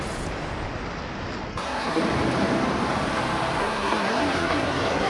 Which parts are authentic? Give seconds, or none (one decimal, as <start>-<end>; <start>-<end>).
0.0-1.5; 2.0-3.6

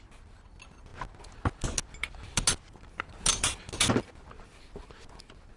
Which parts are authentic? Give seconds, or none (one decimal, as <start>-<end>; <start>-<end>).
0.0-5.6

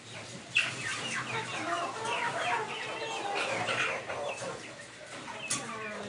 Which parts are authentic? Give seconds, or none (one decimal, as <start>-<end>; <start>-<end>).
0.0-6.1

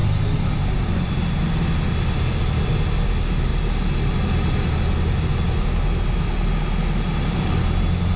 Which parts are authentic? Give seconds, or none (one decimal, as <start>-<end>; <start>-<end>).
0.0-8.2